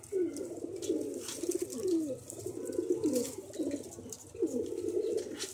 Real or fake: real